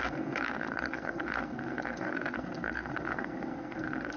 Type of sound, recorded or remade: remade